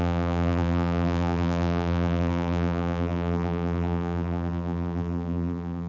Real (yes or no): no